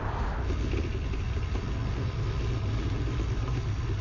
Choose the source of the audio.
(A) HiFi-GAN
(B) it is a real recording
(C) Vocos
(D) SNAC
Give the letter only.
B